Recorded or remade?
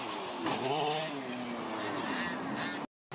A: recorded